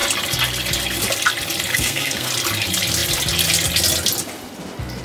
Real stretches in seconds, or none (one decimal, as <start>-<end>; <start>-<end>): 0.0-1.7; 2.3-5.0